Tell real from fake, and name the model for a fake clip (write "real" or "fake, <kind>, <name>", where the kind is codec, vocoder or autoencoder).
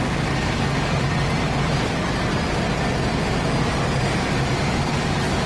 real